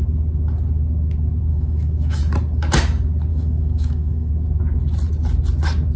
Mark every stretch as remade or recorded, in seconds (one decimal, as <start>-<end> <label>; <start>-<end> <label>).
0.0-1.5 recorded; 1.5-2.2 remade; 2.2-3.3 recorded; 3.3-4.3 remade; 4.3-6.0 recorded